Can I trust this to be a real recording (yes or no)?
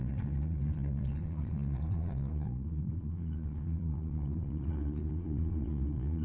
no